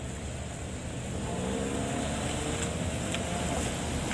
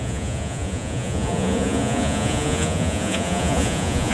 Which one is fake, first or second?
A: second